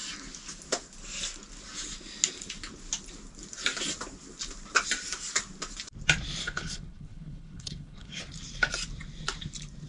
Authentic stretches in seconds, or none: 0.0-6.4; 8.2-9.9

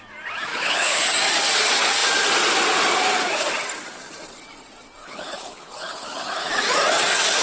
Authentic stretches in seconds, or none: 0.0-0.5; 1.1-5.0; 6.5-7.4

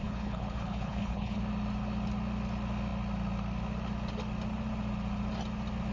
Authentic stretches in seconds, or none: 1.4-5.9

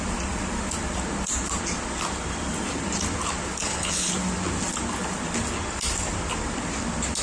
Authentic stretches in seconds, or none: 0.0-3.6; 4.1-7.2

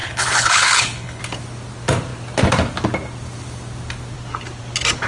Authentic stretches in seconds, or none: 1.2-5.1

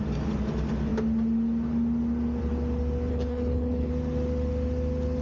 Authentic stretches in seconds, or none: 0.0-3.1; 3.9-5.2

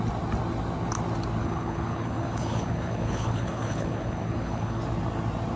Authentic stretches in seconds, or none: 0.0-1.4; 4.8-5.6